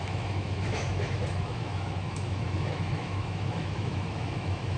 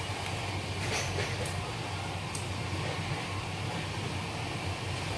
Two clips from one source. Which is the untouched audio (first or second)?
second